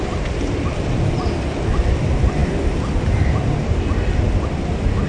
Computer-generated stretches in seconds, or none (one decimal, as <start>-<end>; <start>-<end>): none